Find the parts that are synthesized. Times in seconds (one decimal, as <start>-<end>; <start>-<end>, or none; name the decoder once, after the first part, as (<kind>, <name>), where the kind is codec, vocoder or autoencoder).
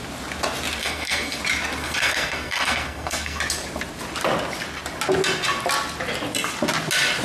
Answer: 0.8-1.4 (codec, SNAC); 1.8-3.4